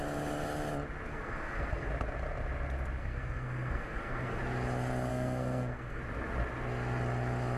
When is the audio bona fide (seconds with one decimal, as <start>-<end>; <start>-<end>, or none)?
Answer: 0.0-1.1; 1.9-3.0; 4.4-5.1; 6.0-7.6

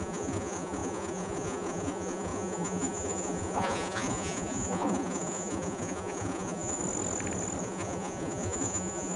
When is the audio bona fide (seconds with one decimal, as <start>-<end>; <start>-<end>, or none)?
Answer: 6.8-7.6